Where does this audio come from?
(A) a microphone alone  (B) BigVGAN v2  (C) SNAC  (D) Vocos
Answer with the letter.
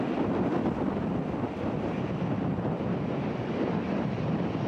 A